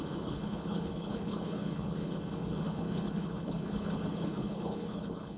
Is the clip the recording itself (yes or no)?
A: no